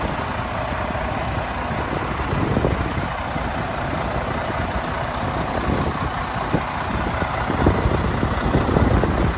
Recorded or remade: recorded